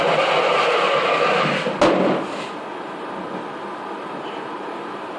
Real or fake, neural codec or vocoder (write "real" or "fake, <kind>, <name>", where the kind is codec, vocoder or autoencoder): real